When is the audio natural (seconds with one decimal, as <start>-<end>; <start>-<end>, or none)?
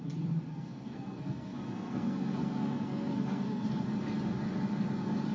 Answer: 0.0-0.5; 3.7-5.3